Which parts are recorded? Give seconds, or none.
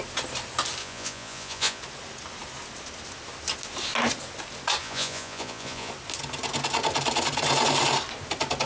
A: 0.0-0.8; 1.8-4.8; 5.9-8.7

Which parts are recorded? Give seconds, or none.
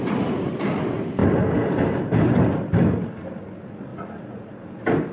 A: 0.0-3.9; 4.5-5.1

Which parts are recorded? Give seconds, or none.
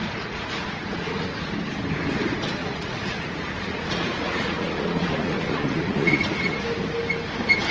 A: 1.5-2.6; 6.6-7.7